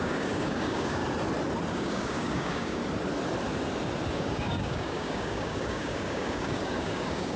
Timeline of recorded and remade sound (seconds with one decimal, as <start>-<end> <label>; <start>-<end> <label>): 0.0-1.0 remade; 1.0-1.7 recorded; 1.7-2.8 remade; 2.8-4.1 recorded; 4.1-7.4 remade